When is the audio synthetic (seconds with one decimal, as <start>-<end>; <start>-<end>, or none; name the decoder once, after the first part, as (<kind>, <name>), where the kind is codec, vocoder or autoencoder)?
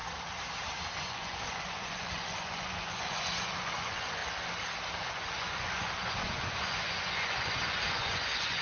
1.0-4.2 (vocoder, Vocos); 5.0-8.6